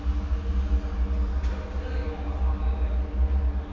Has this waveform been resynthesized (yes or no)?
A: no